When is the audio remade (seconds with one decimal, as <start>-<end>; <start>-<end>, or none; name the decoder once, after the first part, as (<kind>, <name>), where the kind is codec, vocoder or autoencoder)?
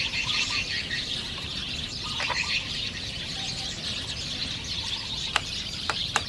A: 0.0-1.6 (vocoder, BigVGAN v2); 2.6-3.8; 4.6-6.3